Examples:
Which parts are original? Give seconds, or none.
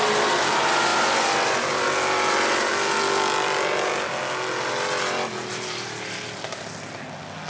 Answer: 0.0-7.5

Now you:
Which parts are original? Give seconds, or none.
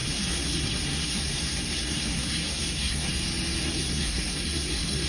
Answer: 3.1-3.6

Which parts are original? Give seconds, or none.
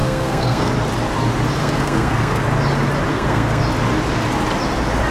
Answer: 0.7-1.6; 2.4-3.1; 3.6-5.1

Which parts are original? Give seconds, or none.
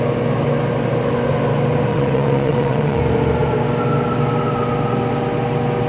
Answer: 0.0-1.9; 3.0-5.9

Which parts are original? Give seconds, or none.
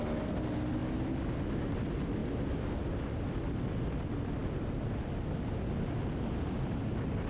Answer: 0.0-7.3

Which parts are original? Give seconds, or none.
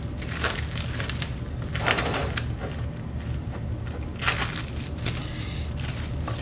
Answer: 2.2-4.6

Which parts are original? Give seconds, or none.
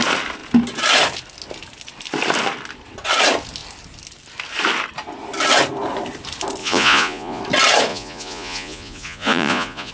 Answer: 0.0-6.6; 7.4-7.9